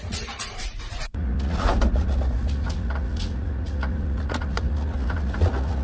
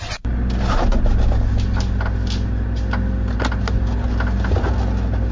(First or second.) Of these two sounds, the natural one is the second